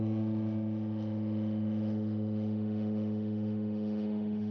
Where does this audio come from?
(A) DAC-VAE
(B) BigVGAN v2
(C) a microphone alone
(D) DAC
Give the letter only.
A